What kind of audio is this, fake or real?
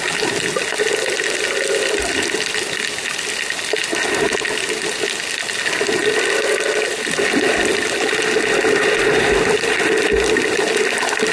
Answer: real